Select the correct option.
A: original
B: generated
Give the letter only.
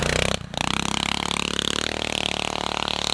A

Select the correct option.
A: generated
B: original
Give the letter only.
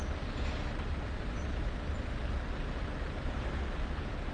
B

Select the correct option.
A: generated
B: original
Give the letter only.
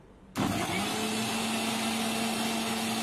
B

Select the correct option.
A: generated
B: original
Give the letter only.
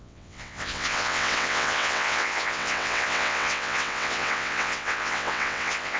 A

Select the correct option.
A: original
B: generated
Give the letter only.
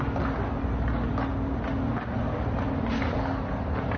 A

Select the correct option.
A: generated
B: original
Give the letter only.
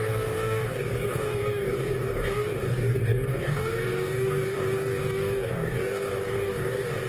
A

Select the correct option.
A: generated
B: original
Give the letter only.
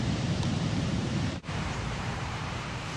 A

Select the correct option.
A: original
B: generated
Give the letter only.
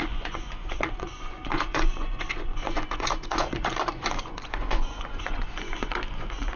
B